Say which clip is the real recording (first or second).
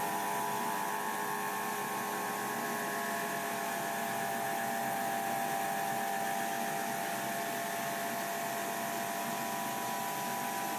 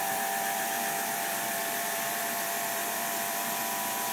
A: first